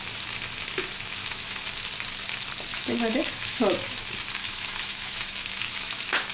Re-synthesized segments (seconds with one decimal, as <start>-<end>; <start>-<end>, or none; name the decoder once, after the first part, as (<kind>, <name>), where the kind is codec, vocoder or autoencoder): 1.2-1.7 (autoencoder, DAC-VAE); 2.7-3.7; 4.4-6.3